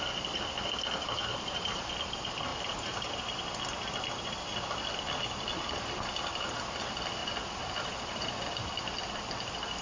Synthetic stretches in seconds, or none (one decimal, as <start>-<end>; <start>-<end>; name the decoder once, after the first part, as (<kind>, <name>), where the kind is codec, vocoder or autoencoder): 1.3-1.9 (vocoder, BigVGAN v2); 2.5-3.1; 7.2-8.7